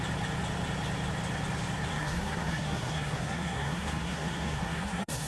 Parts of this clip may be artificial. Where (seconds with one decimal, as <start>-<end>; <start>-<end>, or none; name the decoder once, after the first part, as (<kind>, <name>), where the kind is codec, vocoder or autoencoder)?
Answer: 1.9-5.3 (codec, SNAC)